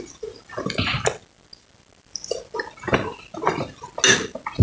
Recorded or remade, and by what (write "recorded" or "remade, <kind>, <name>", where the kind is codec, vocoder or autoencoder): recorded